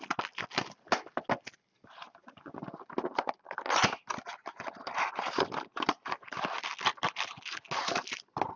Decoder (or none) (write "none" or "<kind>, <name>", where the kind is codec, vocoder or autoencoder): none